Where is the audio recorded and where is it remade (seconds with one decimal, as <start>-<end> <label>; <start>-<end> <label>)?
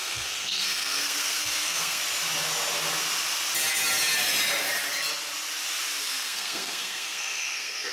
0.0-2.0 remade; 2.0-6.0 recorded; 6.0-7.9 remade